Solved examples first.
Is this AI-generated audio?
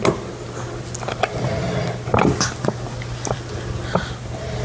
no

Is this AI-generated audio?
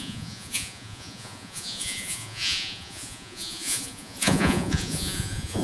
yes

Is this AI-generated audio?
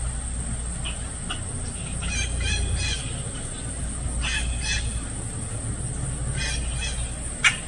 no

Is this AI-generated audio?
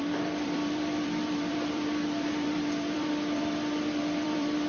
yes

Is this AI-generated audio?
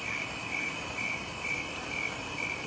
yes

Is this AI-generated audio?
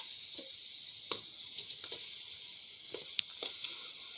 no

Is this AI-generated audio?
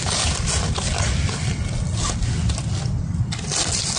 no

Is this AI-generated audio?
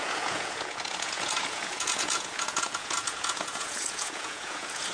yes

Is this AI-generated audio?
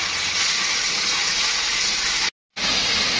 no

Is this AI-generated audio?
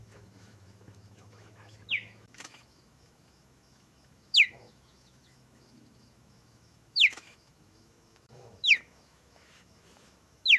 yes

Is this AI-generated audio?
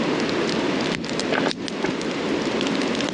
no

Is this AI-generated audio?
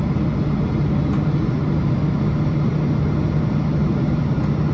no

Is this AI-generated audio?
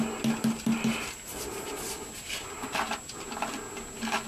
no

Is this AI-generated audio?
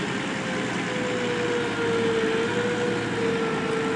no